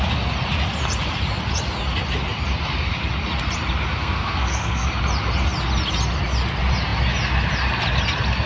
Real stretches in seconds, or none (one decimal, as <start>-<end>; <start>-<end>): 0.0-4.0; 4.9-8.5